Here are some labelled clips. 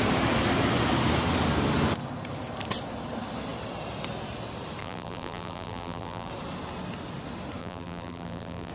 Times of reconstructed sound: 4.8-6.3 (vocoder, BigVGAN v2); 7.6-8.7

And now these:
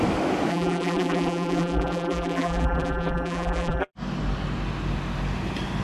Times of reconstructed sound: 0.5-3.9 (vocoder, BigVGAN v2)

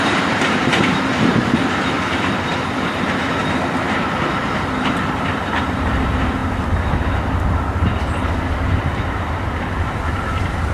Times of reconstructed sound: 0.0-1.6 (vocoder, BigVGAN v2); 4.4-6.4; 9.7-10.7